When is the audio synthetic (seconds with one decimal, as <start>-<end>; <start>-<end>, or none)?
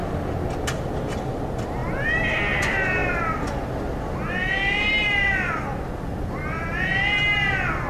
none